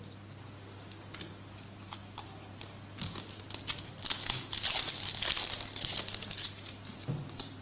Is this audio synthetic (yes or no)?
no